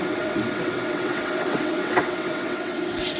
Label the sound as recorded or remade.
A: remade